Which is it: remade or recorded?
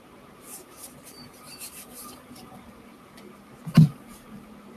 remade